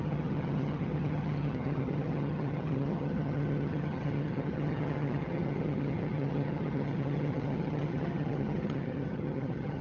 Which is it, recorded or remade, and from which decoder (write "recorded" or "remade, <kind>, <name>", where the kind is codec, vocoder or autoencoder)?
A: remade, vocoder, HiFi-GAN